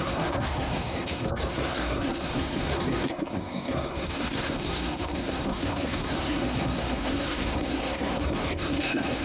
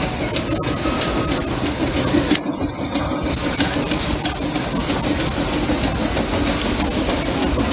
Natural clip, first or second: second